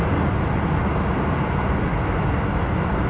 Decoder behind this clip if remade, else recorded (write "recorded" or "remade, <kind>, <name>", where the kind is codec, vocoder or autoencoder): recorded